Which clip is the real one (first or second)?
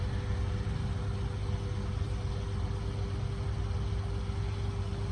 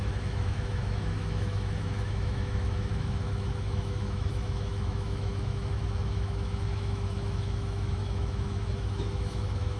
first